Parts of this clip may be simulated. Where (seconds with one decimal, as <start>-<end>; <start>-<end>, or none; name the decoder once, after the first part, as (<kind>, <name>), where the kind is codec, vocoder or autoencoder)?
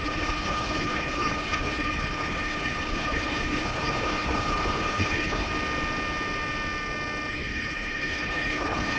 0.0-5.5 (codec, HILCodec); 7.3-9.0